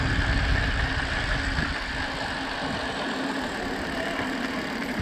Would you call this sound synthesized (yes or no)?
no